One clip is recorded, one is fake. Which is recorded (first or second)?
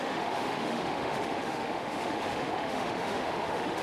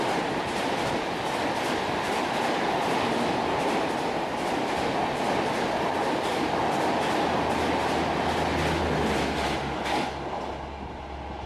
second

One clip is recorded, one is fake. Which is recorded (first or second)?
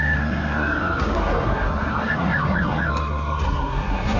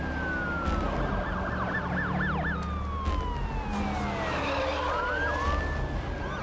second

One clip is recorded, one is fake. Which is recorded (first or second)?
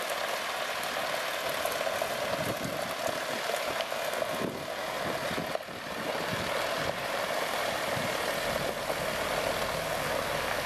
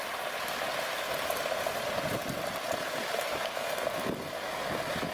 first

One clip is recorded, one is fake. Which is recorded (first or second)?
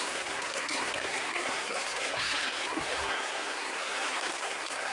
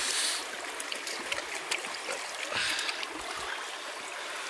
second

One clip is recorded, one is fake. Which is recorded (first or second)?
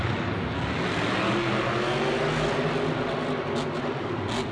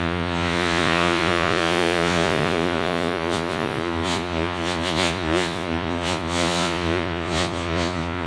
first